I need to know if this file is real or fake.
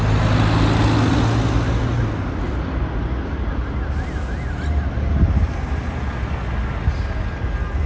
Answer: real